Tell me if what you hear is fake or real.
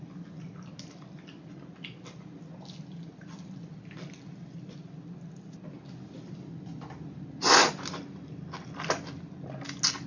real